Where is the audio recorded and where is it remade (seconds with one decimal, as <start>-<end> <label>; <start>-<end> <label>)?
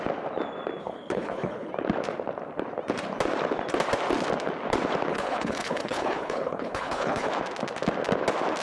0.0-0.8 recorded; 0.8-1.7 remade; 1.7-5.1 recorded; 5.1-7.3 remade; 7.3-8.6 recorded